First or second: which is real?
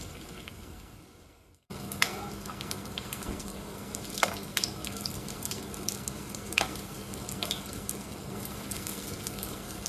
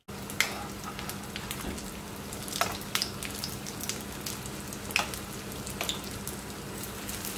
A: second